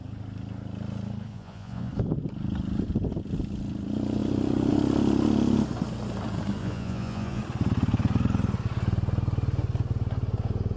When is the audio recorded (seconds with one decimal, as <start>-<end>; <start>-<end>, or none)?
0.0-1.3; 1.9-6.6; 7.4-10.8